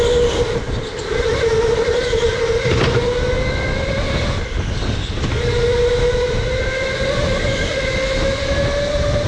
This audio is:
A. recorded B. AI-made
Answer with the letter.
A